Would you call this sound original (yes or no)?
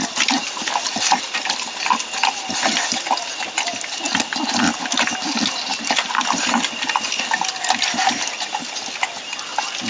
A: yes